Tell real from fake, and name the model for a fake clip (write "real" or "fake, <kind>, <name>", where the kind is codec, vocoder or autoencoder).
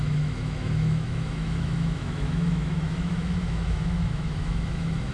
fake, autoencoder, DAC-VAE